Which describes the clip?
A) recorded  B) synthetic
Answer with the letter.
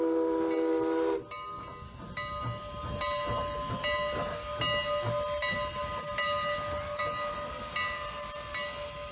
A